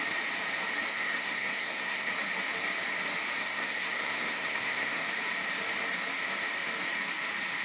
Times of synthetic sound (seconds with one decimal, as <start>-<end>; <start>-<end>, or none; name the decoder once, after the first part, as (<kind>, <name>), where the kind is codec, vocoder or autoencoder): 0.9-2.1 (codec, SNAC); 3.4-5.0